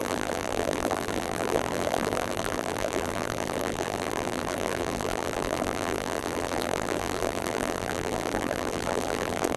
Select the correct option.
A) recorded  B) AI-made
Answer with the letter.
B